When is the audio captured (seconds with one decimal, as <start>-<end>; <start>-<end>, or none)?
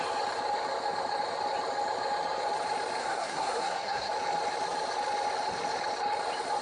0.0-3.0; 4.1-6.6